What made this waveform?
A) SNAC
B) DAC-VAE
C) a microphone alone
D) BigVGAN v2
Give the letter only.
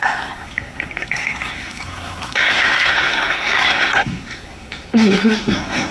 A